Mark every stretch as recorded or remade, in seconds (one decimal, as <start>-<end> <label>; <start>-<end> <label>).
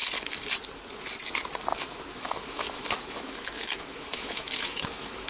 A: 0.0-1.7 recorded; 1.7-5.3 remade